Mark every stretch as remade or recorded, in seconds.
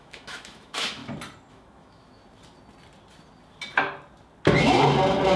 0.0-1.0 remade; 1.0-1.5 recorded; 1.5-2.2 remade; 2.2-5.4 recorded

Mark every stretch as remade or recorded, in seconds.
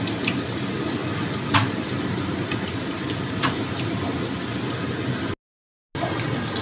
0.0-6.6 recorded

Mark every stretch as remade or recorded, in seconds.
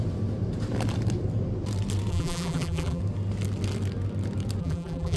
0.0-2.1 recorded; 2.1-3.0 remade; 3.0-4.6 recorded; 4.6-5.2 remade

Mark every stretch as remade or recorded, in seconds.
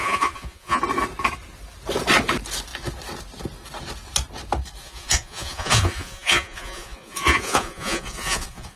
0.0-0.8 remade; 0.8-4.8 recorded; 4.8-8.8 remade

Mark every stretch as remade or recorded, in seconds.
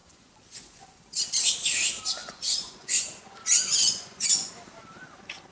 0.0-1.0 remade; 1.0-2.2 recorded; 2.2-4.5 remade; 4.5-5.5 recorded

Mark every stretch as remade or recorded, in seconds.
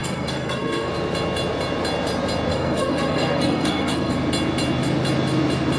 0.0-0.9 remade; 0.9-2.5 recorded; 2.5-4.1 remade; 4.1-5.8 recorded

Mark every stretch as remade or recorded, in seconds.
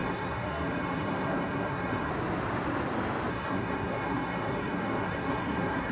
0.0-2.1 remade; 2.1-3.3 recorded; 3.3-5.9 remade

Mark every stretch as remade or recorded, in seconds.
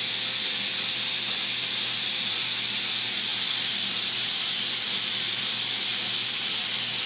0.0-7.1 recorded